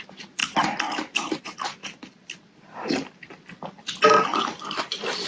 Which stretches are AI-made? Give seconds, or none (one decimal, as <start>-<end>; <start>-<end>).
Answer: 0.0-0.4; 1.4-1.8; 4.2-5.3